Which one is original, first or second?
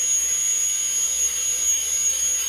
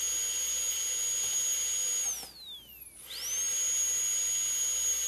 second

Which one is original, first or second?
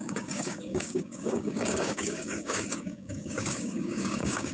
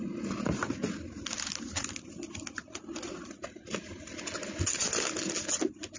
second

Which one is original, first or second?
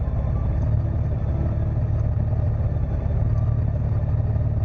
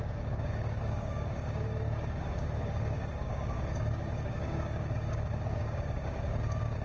first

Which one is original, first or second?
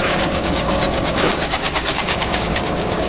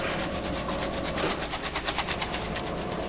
second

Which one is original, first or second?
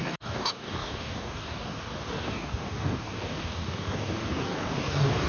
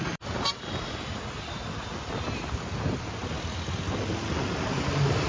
second